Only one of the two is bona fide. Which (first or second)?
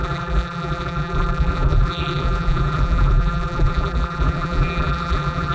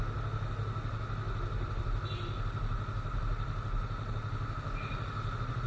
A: second